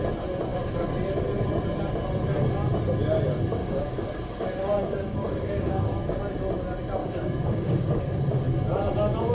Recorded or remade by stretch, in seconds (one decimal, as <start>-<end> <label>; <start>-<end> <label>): 0.0-3.6 recorded; 3.6-6.2 remade; 6.2-7.0 recorded; 7.0-8.0 remade; 8.0-9.3 recorded

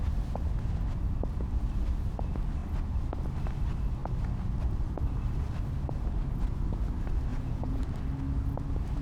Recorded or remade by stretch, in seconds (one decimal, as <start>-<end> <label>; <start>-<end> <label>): 0.0-7.3 recorded; 7.3-7.8 remade; 7.8-9.0 recorded

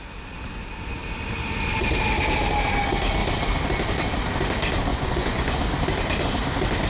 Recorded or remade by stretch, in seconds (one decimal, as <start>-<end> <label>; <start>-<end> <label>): 0.0-4.9 recorded; 4.9-5.6 remade; 5.6-6.9 recorded

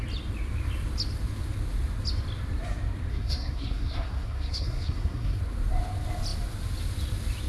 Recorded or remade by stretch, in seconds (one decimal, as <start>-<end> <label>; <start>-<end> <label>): 0.0-3.1 recorded; 3.1-5.4 remade; 5.4-7.5 recorded

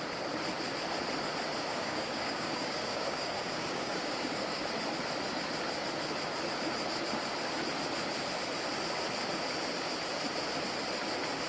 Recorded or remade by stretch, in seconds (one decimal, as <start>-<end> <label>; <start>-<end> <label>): 0.0-1.7 recorded; 1.7-4.7 remade; 4.7-11.5 recorded

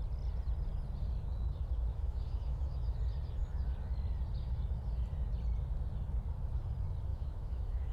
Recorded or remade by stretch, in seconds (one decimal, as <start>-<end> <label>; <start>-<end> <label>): 0.0-1.9 recorded; 1.9-3.0 remade; 3.0-7.1 recorded; 7.1-7.9 remade